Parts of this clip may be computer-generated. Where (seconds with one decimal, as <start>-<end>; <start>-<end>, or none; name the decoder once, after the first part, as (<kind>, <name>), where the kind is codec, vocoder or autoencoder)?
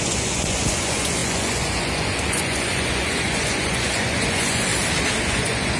0.0-4.7 (vocoder, Vocos); 5.2-5.8